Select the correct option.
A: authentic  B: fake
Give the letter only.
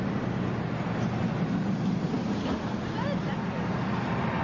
A